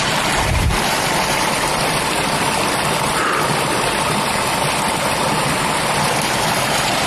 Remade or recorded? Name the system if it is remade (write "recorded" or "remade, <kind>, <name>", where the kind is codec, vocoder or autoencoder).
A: remade, vocoder, BigVGAN v2